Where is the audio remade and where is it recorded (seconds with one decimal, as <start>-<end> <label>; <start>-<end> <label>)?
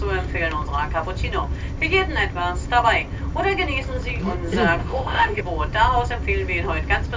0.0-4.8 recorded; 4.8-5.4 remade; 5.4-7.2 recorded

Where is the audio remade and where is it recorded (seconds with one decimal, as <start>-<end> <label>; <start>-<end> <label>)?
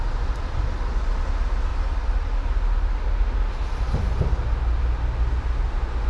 0.0-6.1 recorded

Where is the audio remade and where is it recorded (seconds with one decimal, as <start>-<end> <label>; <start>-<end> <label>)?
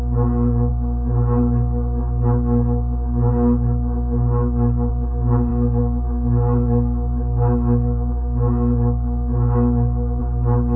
0.0-5.5 recorded; 5.5-10.2 remade; 10.2-10.8 recorded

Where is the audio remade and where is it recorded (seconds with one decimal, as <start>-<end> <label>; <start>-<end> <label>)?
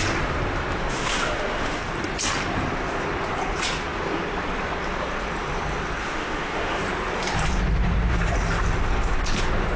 0.0-0.9 recorded; 0.9-1.8 remade; 1.8-6.0 recorded; 6.0-6.8 remade; 6.8-9.8 recorded